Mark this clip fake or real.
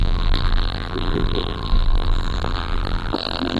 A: fake